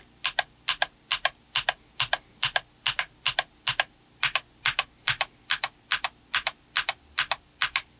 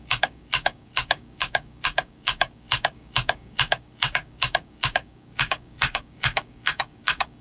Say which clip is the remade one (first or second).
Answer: second